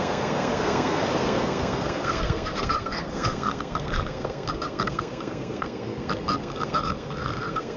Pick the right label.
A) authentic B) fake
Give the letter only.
B